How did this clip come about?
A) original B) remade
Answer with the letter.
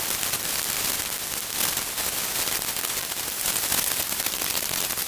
A